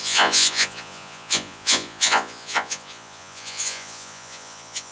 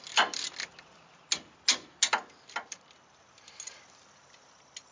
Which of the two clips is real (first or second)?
second